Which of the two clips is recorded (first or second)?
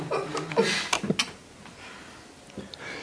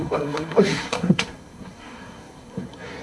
first